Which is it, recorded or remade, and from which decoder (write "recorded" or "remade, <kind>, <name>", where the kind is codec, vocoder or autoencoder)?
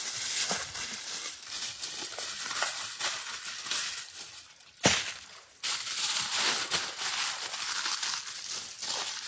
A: recorded